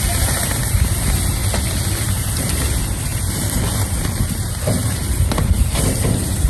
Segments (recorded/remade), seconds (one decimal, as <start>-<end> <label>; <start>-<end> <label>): 0.0-1.4 remade; 1.4-2.0 recorded; 2.0-6.5 remade